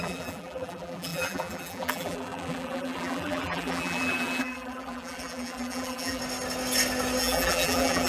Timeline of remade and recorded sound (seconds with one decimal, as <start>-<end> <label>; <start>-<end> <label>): 0.0-6.2 remade; 6.2-7.2 recorded; 7.2-8.1 remade